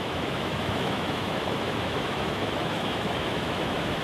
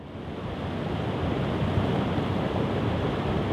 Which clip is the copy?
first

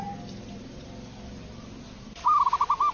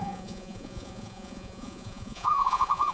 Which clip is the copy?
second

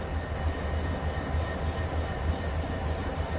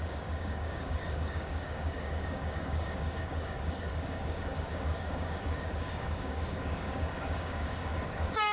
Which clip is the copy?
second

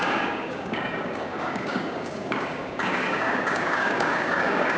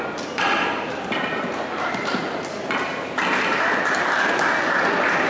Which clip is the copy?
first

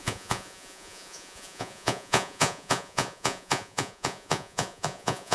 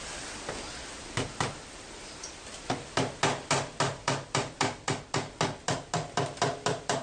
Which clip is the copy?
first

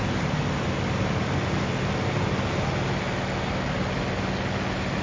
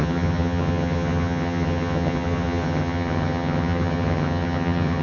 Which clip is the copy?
second